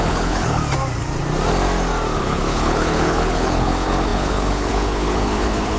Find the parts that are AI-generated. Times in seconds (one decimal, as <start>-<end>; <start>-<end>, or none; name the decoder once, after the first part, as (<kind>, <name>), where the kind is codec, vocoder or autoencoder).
0.0-0.6 (codec, HILCodec); 2.2-5.8